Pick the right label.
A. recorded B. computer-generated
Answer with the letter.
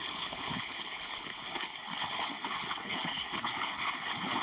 B